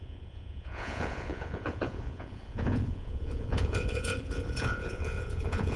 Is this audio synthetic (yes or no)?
yes